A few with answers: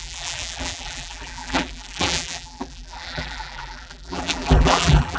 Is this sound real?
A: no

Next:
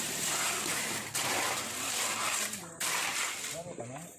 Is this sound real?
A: no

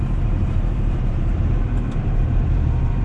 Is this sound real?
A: no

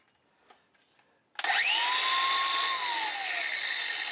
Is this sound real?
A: yes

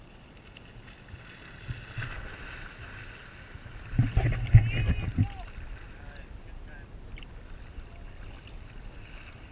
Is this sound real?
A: yes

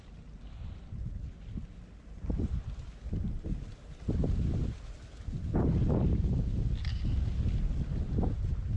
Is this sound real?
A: yes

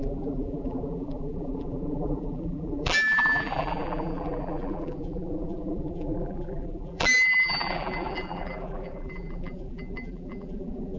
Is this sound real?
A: no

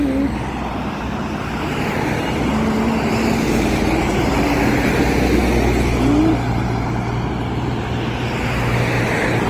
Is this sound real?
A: yes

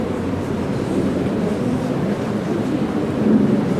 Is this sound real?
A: no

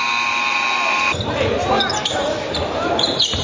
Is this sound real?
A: no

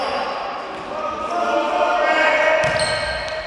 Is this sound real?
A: yes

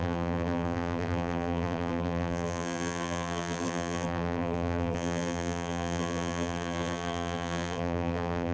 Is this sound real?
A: no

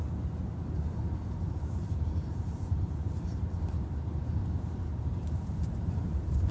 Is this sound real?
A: no